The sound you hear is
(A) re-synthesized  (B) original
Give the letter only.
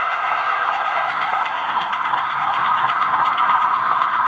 A